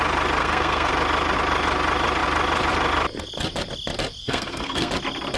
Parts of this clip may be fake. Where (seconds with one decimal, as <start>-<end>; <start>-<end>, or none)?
0.4-0.9; 4.2-4.9